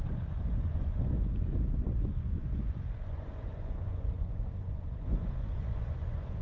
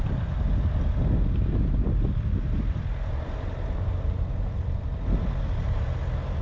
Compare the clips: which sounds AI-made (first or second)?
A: first